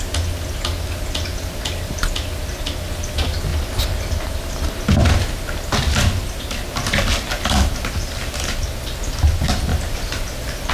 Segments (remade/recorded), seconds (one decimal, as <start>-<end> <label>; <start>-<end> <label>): 0.0-3.5 recorded; 3.5-4.7 remade; 4.7-9.7 recorded; 9.7-10.7 remade